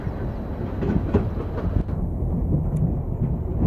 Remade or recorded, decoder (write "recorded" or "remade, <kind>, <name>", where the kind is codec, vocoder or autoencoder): recorded